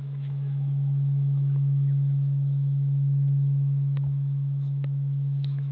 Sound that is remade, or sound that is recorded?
remade